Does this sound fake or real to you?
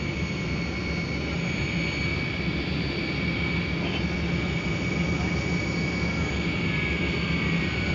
real